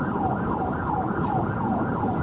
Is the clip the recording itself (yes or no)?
yes